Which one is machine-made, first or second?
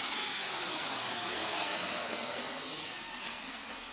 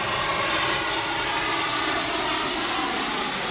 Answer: first